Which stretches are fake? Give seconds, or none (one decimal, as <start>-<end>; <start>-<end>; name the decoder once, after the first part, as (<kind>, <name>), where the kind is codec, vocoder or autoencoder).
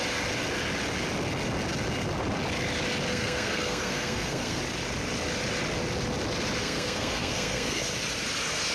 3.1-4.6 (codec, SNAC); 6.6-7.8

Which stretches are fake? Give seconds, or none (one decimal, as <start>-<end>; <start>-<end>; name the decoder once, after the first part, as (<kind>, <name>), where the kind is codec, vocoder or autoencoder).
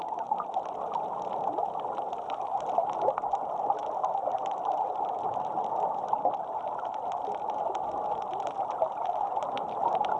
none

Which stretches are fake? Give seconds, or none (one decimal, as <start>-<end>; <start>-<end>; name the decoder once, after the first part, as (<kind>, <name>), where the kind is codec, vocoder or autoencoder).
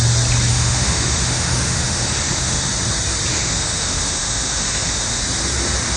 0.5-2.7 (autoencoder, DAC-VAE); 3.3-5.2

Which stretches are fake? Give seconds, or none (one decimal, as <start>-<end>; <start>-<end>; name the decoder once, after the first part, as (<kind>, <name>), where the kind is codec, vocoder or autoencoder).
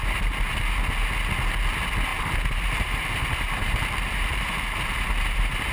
0.0-0.6 (vocoder, BigVGAN v2); 2.1-5.7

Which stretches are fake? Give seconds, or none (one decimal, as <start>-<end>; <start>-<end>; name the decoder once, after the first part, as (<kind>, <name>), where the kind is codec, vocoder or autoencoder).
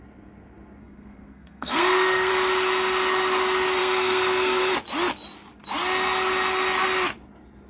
0.8-2.3 (codec, SNAC); 3.8-4.7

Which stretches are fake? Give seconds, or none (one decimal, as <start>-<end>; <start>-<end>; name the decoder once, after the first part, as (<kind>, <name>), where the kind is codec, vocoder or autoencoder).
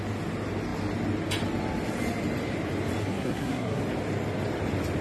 3.0-3.8 (codec, SNAC)